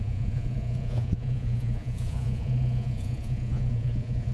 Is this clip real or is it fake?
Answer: fake